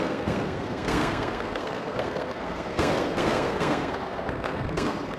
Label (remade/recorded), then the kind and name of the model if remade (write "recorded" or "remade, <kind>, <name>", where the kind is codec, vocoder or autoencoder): remade, codec, SNAC